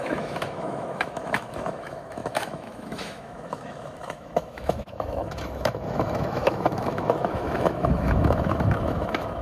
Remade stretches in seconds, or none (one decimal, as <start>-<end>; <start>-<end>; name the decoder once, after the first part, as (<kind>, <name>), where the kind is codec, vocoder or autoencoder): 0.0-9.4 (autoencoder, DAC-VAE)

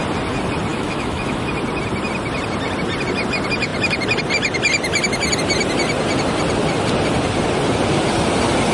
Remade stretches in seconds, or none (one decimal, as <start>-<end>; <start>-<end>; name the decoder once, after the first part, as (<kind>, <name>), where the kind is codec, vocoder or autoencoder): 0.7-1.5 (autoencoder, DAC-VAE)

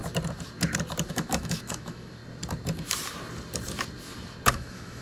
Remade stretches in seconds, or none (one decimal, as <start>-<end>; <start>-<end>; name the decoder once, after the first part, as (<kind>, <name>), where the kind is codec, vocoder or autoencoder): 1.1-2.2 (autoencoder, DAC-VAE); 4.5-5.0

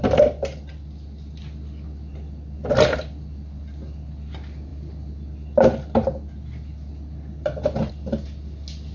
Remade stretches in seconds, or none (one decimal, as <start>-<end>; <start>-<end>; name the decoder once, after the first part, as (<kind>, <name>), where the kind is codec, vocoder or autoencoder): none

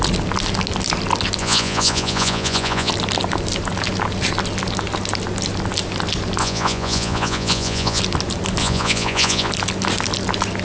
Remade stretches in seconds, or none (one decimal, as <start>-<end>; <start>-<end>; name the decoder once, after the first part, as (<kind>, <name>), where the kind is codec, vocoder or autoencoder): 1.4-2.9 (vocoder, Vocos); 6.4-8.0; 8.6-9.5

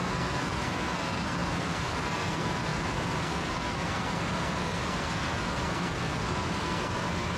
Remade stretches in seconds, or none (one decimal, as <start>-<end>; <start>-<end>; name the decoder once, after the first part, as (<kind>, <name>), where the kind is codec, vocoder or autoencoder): 0.0-7.4 (codec, SNAC)

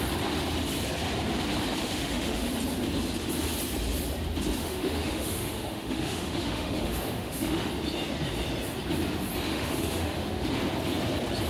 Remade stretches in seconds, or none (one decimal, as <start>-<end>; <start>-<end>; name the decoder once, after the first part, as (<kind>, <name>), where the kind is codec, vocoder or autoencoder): 1.8-2.5 (autoencoder, DAC-VAE); 4.6-7.7; 9.5-10.5

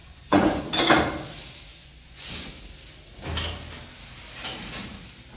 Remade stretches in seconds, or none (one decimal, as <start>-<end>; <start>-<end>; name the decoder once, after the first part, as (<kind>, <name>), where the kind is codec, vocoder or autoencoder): 0.0-0.6 (vocoder, Vocos); 1.7-2.5